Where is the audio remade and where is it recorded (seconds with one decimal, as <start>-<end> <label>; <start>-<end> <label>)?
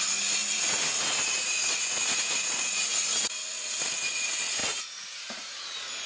0.0-6.1 remade